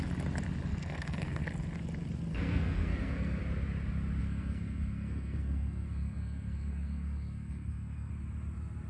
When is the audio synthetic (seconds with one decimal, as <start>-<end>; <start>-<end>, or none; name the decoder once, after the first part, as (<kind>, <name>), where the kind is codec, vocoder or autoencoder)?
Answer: 0.7-1.4 (codec, SNAC); 2.3-3.4; 4.2-8.1